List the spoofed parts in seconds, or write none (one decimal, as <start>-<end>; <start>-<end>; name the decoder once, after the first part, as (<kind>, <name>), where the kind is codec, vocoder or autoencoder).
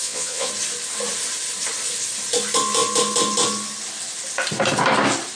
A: 0.0-0.5 (vocoder, Vocos)